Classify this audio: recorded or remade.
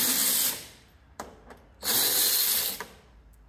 recorded